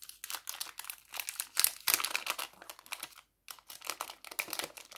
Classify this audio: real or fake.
real